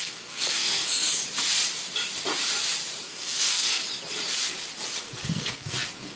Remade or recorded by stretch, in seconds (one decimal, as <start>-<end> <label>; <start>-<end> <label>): 0.0-1.2 remade; 1.2-3.0 recorded; 3.0-3.8 remade; 3.8-5.0 recorded; 5.0-6.2 remade